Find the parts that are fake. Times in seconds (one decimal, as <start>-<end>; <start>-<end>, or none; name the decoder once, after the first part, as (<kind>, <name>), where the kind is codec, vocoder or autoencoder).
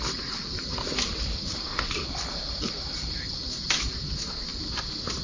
0.4-3.5 (vocoder, BigVGAN v2); 4.5-5.2